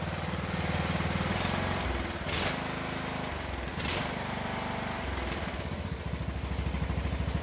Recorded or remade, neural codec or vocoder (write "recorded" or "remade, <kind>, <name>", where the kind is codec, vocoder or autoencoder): recorded